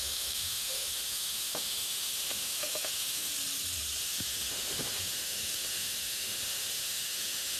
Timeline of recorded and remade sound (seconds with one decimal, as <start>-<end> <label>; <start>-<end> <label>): 0.0-3.3 remade; 3.3-4.0 recorded; 4.0-7.6 remade